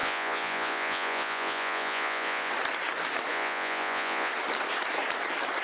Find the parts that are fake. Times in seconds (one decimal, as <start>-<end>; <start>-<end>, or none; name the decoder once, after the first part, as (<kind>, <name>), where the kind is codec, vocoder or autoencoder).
0.0-2.5 (vocoder, Vocos); 3.3-4.3